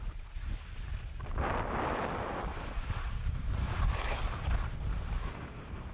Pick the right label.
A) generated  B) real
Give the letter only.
B